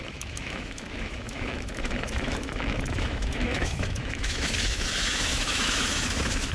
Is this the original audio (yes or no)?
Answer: no